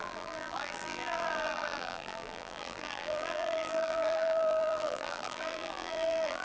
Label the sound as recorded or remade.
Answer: remade